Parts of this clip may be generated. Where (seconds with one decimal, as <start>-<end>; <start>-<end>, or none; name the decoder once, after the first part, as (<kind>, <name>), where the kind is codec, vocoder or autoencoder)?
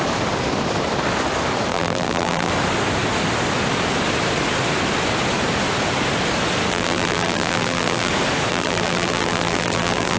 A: 1.7-2.5 (vocoder, BigVGAN v2); 6.7-8.1; 8.5-10.2